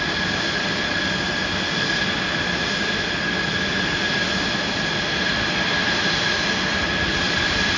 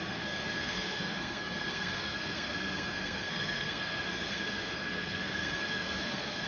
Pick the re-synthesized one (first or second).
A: second